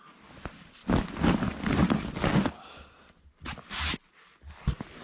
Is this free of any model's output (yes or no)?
yes